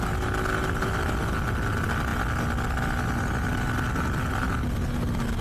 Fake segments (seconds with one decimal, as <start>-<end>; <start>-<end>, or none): none